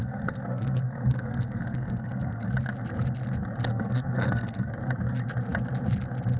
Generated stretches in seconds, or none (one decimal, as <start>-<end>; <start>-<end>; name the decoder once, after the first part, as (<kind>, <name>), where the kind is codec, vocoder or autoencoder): 0.0-2.5 (codec, SNAC); 3.7-4.7